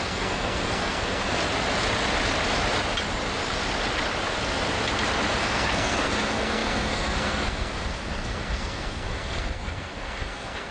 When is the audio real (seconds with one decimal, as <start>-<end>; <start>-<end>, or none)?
1.4-5.4